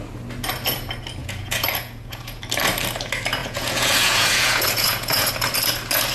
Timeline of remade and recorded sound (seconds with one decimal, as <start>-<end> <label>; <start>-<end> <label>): 0.0-1.2 recorded; 1.2-2.4 remade; 2.4-3.4 recorded; 3.4-5.3 remade; 5.3-6.1 recorded